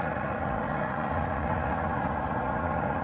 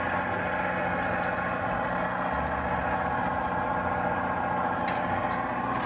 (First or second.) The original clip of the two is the second